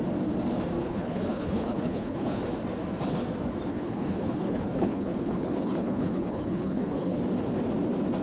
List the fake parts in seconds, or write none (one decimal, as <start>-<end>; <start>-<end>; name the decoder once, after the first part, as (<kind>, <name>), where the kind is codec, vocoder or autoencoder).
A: 0.8-2.4 (codec, HILCodec); 3.7-7.2